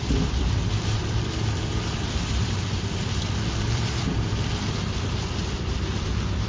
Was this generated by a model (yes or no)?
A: yes